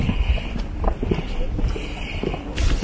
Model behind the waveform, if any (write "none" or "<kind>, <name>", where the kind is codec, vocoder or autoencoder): none